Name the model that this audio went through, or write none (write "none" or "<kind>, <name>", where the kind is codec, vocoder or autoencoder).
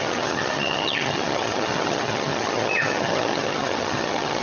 vocoder, HiFi-GAN